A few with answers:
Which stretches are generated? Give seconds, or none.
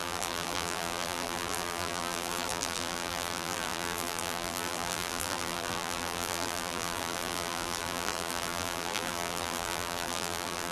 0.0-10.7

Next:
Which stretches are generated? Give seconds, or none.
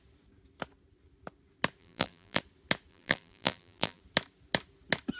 1.8-2.4; 2.9-4.0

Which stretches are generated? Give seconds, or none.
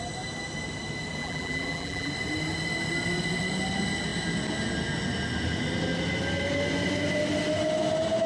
1.2-2.1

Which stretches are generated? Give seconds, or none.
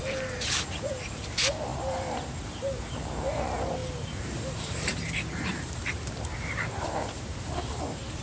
0.0-8.2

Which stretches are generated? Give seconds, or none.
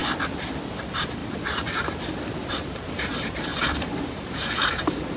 0.7-5.2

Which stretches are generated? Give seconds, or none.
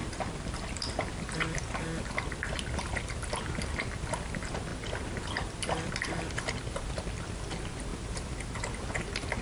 0.0-1.2; 4.7-6.3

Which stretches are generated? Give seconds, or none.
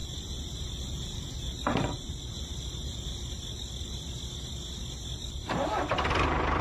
0.0-3.2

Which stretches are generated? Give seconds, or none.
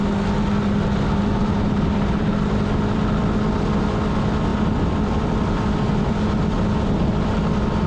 1.4-2.6